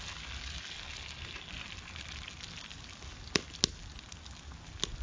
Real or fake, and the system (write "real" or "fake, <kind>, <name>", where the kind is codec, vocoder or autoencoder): real